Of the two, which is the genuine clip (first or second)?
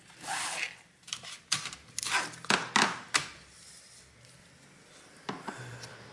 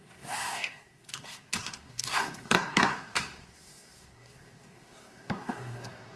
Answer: first